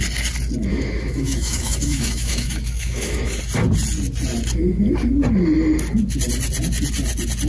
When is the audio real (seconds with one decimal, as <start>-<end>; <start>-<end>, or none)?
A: 0.0-0.7; 3.4-7.5